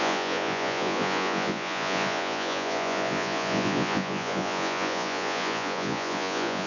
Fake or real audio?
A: fake